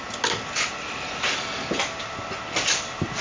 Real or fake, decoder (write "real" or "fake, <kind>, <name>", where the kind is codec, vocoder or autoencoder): real